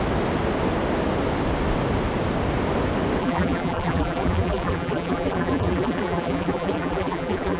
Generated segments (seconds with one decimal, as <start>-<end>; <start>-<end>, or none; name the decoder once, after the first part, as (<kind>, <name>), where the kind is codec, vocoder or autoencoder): 3.2-7.6 (vocoder, BigVGAN v2)